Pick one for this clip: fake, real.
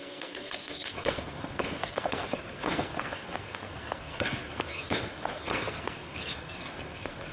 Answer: fake